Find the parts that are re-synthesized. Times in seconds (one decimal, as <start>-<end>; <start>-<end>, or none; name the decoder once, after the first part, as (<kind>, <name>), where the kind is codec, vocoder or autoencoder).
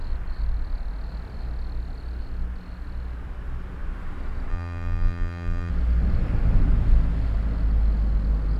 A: 4.5-5.7 (vocoder, BigVGAN v2)